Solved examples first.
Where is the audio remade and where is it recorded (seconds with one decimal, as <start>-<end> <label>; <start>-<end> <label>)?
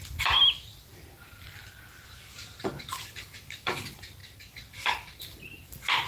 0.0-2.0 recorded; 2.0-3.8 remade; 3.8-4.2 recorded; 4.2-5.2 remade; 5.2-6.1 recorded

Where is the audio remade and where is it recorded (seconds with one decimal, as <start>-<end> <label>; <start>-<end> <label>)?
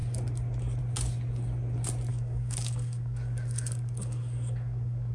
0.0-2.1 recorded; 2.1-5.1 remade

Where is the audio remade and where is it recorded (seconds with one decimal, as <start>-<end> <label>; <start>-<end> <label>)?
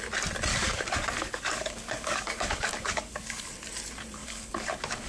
0.0-0.5 recorded; 0.5-3.5 remade; 3.5-4.2 recorded; 4.2-5.1 remade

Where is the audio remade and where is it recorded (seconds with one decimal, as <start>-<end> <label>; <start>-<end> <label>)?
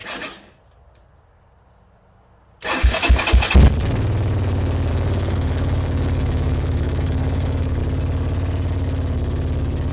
0.0-4.9 recorded; 4.9-7.8 remade; 7.8-9.9 recorded